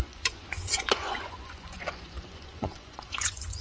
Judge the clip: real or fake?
fake